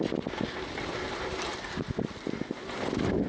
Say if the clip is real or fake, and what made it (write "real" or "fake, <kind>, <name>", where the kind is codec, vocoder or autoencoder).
real